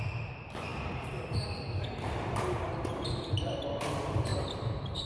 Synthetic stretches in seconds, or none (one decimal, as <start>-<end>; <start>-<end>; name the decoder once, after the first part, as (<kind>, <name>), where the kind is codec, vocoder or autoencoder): 0.0-5.1 (vocoder, BigVGAN v2)